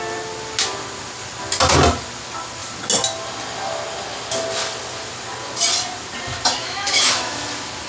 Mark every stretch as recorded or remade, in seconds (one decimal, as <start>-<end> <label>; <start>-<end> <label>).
0.0-6.6 recorded; 6.6-7.4 remade; 7.4-7.9 recorded